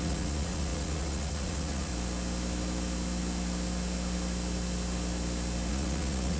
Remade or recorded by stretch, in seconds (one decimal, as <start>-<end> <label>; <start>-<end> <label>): 0.0-1.9 remade; 1.9-5.7 recorded; 5.7-6.4 remade